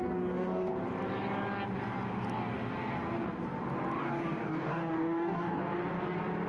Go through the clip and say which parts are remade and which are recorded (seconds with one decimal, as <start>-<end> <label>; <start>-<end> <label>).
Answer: 0.0-0.7 remade; 0.7-4.0 recorded; 4.0-5.6 remade; 5.6-6.5 recorded